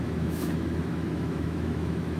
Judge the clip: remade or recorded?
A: remade